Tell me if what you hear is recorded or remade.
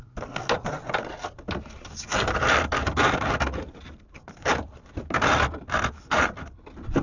recorded